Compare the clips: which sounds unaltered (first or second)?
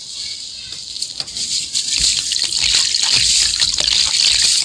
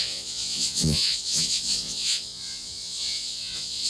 first